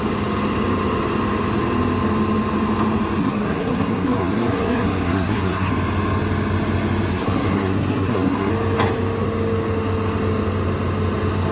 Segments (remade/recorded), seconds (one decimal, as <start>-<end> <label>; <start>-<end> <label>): 0.0-3.2 recorded; 3.2-5.7 remade; 5.7-7.1 recorded; 7.1-8.5 remade; 8.5-11.5 recorded